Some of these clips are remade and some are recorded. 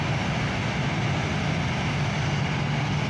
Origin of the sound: recorded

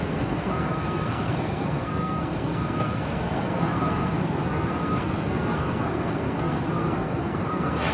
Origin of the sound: remade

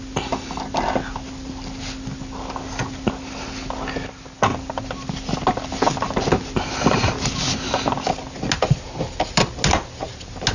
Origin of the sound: recorded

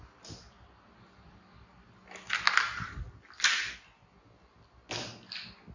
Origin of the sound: recorded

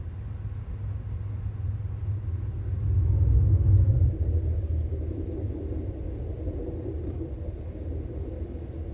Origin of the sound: recorded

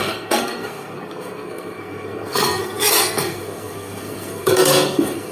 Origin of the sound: remade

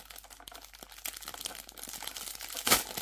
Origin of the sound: recorded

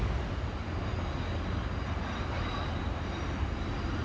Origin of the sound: recorded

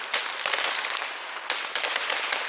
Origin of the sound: recorded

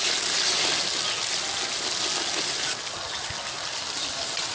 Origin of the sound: recorded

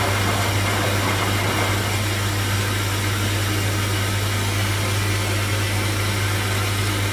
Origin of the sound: recorded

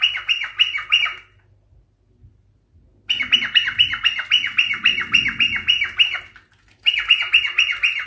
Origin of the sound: recorded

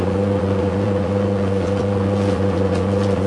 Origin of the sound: remade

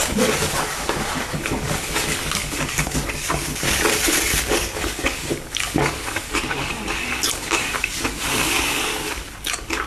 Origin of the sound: remade